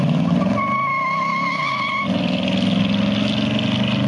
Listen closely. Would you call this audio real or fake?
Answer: real